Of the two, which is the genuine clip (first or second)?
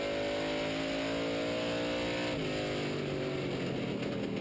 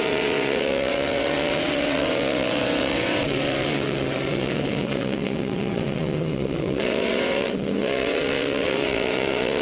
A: first